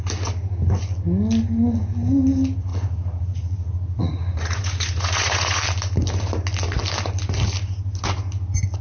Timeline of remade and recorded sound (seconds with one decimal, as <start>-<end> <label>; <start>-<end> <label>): 0.0-2.7 recorded; 2.7-5.6 remade; 5.6-8.8 recorded